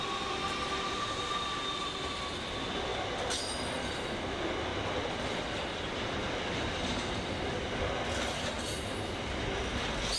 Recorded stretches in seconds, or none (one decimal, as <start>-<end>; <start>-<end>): 0.0-10.2